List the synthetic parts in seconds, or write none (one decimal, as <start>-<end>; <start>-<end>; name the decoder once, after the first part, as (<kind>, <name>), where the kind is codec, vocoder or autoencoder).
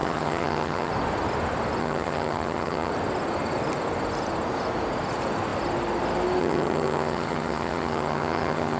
0.0-0.9 (vocoder, HiFi-GAN); 1.8-2.9; 6.4-8.8